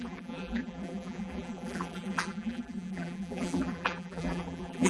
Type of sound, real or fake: fake